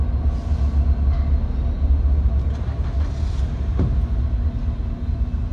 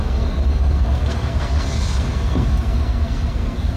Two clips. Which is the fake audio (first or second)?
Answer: second